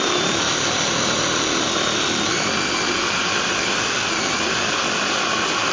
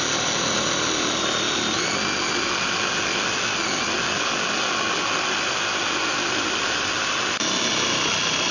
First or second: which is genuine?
second